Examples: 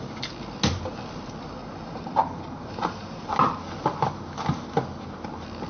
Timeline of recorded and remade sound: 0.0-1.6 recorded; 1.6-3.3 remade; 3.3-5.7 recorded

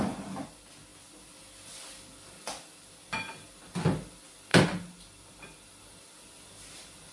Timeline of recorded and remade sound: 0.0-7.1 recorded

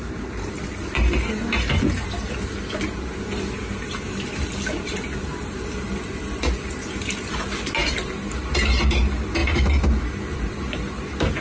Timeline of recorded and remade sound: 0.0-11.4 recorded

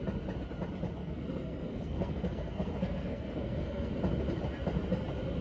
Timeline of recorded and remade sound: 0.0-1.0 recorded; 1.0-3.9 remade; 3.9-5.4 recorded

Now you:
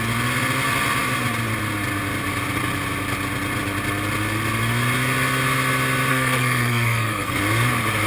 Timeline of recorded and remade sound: 0.0-6.1 recorded; 6.1-7.4 remade; 7.4-8.1 recorded

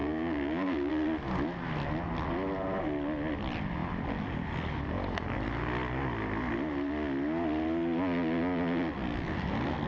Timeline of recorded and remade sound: 0.0-0.9 remade; 0.9-9.9 recorded